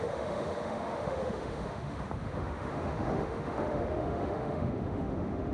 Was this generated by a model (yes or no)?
yes